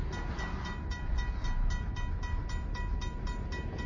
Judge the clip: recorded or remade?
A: recorded